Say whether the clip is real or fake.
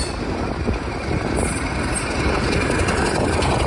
real